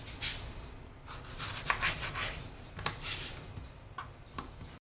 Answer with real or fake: fake